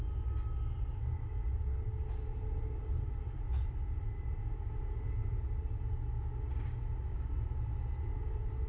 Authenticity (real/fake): real